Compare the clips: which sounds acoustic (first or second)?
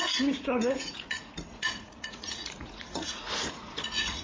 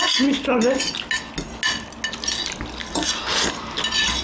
second